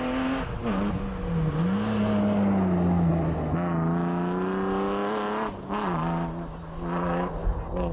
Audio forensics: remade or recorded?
recorded